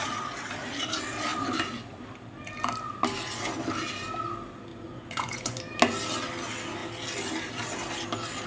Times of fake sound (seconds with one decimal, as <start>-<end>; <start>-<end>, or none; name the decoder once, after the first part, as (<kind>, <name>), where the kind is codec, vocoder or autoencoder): 4.7-5.6 (vocoder, Vocos)

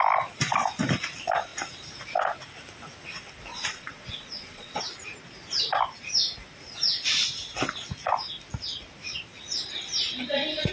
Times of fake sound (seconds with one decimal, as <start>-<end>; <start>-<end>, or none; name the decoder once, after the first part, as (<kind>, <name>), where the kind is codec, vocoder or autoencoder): 3.5-4.8 (vocoder, Vocos)